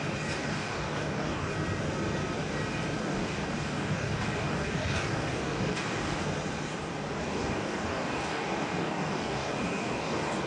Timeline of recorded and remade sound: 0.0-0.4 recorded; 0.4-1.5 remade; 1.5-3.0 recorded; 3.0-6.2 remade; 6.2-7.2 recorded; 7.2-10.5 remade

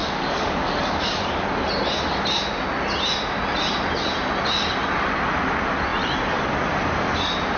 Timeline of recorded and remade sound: 0.0-1.5 remade; 1.5-7.6 recorded

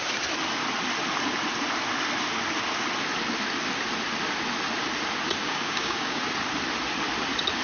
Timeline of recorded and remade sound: 0.0-5.4 recorded; 5.4-6.2 remade; 6.2-7.6 recorded